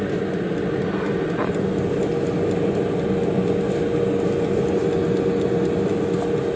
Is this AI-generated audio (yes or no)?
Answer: no